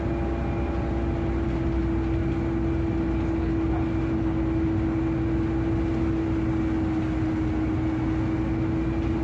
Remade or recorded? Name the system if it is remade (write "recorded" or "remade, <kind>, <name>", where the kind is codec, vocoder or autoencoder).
recorded